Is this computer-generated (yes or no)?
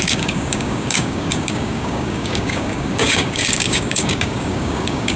yes